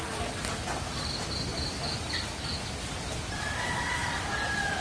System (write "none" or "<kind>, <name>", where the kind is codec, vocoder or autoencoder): none